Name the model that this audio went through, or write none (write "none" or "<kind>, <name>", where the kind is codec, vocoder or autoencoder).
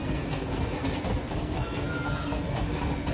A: codec, SNAC